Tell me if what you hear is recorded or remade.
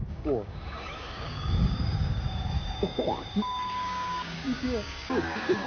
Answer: remade